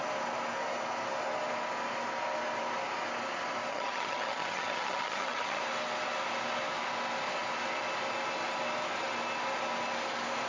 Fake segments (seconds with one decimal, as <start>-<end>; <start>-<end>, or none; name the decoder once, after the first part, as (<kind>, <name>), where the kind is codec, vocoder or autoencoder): 3.7-5.6 (vocoder, HiFi-GAN)